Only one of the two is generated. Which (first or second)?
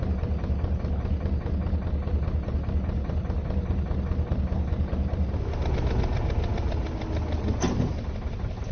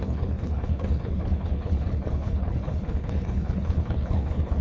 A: second